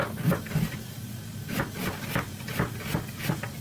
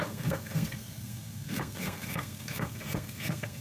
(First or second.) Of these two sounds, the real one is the first